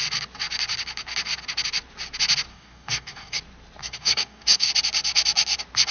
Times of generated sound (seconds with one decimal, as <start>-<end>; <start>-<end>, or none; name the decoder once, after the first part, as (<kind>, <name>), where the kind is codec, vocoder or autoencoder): 2.5-3.4 (codec, DAC); 3.8-4.7